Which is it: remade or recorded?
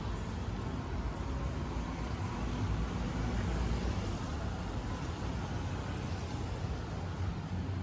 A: recorded